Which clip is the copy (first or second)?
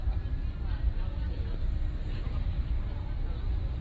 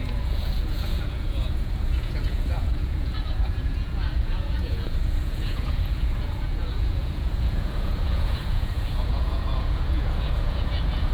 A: second